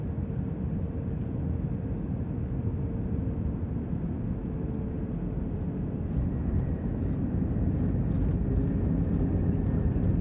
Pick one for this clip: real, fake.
real